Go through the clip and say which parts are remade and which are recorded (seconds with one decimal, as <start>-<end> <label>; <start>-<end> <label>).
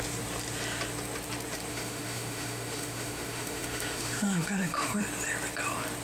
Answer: 0.0-1.7 recorded; 1.7-5.0 remade; 5.0-6.0 recorded